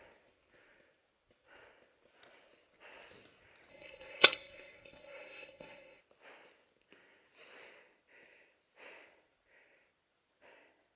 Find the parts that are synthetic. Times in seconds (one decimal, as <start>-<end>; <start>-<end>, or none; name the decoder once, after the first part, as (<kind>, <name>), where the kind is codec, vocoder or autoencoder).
3.7-6.0 (codec, SNAC)